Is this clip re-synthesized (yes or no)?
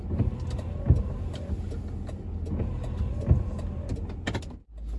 no